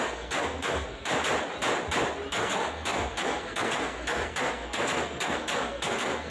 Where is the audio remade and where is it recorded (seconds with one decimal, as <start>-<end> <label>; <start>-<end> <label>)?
0.0-1.1 remade; 1.1-2.3 recorded; 2.3-6.3 remade